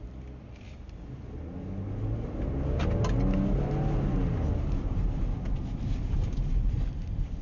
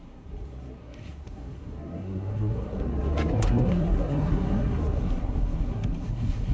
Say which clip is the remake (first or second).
second